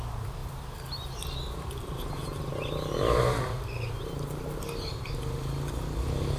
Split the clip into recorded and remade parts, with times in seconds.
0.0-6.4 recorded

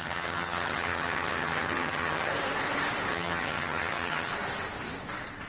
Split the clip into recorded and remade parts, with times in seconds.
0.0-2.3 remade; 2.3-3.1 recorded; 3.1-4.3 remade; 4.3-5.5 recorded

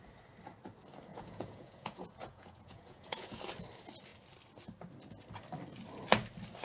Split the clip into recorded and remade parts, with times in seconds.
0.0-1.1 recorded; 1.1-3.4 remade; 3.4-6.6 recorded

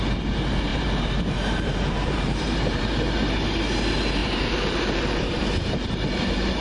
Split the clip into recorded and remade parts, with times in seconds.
0.0-0.7 recorded; 0.7-2.8 remade; 2.8-4.2 recorded; 4.2-6.6 remade

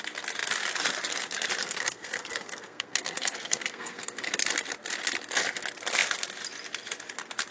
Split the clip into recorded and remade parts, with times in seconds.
0.0-1.6 recorded; 1.6-4.3 remade; 4.3-7.5 recorded

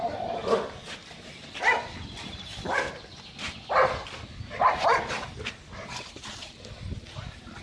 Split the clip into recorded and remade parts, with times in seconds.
0.0-0.4 remade; 0.4-4.4 recorded; 4.4-7.6 remade